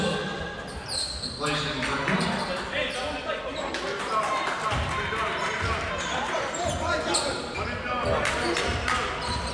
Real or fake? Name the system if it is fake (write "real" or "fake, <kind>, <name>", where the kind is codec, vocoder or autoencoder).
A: real